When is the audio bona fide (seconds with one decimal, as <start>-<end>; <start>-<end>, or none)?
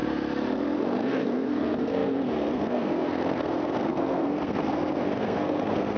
none